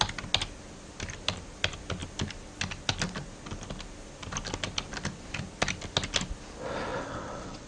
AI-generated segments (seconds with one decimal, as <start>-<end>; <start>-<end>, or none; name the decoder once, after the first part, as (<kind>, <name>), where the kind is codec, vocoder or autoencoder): 6.9-7.7 (vocoder, WaveNeXt)